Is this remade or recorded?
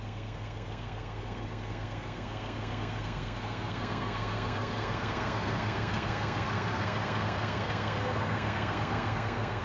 remade